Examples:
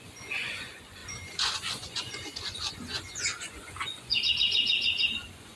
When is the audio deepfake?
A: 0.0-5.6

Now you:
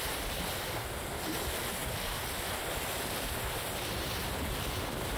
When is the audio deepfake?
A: none

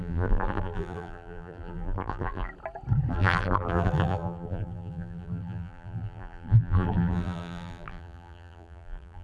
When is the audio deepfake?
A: 0.0-2.5; 3.1-9.2

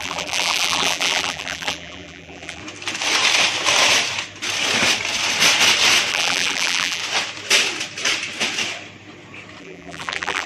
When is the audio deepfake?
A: 0.0-2.6; 6.1-7.0; 9.6-10.5

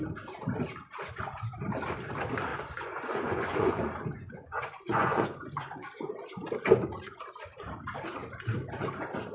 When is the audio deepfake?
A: 2.5-6.1

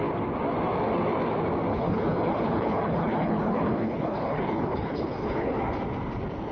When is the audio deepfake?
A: 1.7-5.6

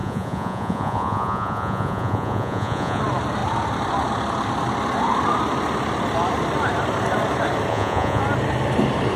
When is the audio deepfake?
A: 0.0-3.0; 7.7-8.2

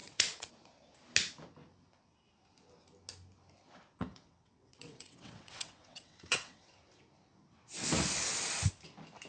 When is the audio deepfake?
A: 0.0-0.5; 4.1-6.7